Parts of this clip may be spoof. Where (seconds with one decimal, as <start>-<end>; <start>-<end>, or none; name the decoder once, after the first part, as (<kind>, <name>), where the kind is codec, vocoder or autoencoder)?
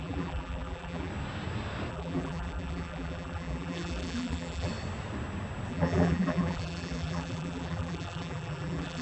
0.0-1.1 (vocoder, BigVGAN v2); 1.9-4.7; 5.7-9.0